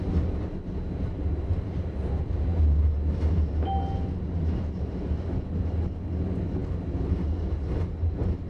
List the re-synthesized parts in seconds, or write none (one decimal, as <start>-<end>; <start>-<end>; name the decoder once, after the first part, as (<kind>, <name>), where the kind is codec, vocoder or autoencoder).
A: none